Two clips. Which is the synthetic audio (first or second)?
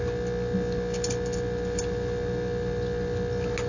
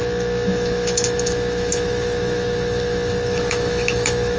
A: second